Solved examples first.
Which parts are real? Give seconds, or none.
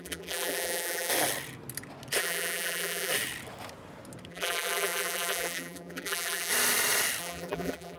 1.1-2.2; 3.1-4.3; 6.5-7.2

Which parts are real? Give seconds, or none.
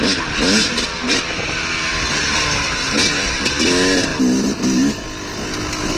0.0-6.0